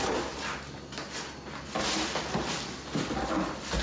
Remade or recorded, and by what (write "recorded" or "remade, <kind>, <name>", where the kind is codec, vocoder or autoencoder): recorded